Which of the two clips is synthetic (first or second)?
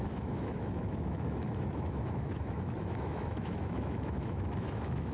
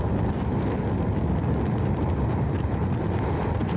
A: first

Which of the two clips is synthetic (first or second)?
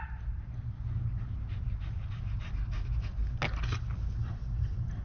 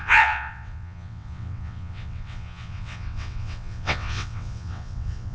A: second